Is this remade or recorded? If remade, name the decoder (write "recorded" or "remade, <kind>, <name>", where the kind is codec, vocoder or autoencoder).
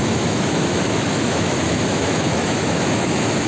remade, autoencoder, DAC-VAE